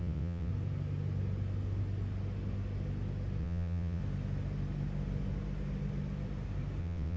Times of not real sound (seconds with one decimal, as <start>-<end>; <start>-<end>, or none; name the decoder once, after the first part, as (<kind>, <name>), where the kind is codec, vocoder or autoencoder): 0.0-0.5 (vocoder, WaveNeXt); 3.4-4.0; 6.8-7.2